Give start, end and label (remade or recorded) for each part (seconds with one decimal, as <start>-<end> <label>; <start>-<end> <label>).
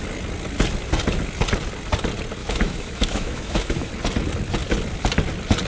0.0-2.4 recorded; 2.4-3.9 remade; 3.9-5.7 recorded